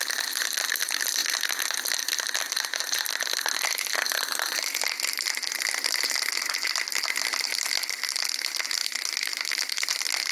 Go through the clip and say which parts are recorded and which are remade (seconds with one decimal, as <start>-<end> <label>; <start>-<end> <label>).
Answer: 0.0-10.3 recorded